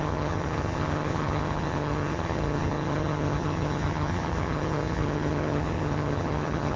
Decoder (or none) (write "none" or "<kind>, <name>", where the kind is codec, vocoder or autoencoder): vocoder, HiFi-GAN